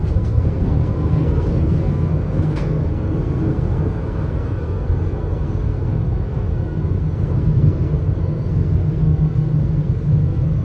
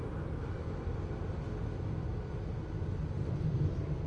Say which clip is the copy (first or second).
first